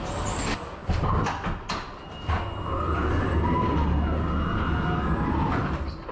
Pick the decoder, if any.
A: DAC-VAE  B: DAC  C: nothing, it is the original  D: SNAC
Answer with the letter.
C